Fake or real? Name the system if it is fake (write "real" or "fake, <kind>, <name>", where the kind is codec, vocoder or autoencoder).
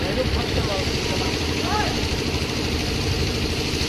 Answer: real